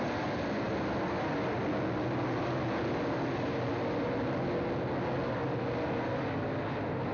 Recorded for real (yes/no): yes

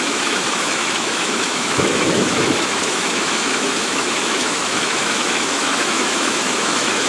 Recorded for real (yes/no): no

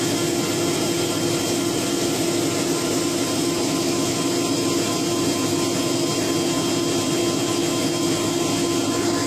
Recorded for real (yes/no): yes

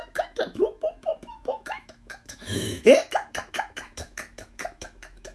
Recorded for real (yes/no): no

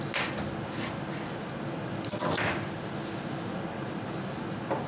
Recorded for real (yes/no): yes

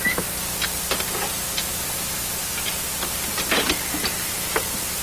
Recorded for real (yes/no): yes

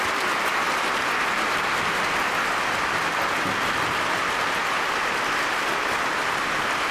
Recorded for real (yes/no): yes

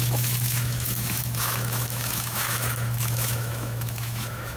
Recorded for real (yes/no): no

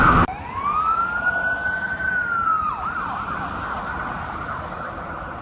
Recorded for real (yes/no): yes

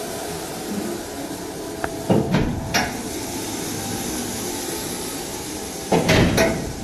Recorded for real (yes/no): yes